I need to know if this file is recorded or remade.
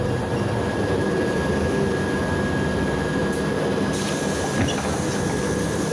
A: recorded